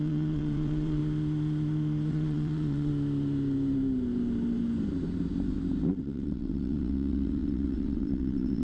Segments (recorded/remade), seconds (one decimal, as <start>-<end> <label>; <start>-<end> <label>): 0.0-1.0 remade; 1.0-2.1 recorded; 2.1-2.9 remade; 2.9-5.9 recorded; 5.9-8.6 remade